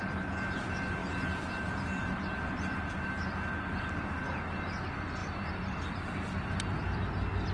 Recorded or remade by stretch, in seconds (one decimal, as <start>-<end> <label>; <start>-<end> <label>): 0.0-1.0 recorded; 1.0-2.6 remade; 2.6-5.2 recorded; 5.2-5.8 remade; 5.8-7.5 recorded